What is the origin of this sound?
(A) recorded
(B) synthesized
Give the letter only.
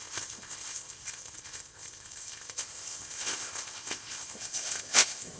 B